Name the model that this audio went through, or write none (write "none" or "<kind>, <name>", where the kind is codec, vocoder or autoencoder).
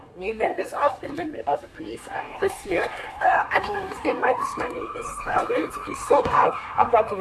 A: codec, SNAC